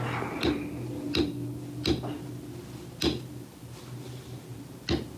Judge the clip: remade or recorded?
recorded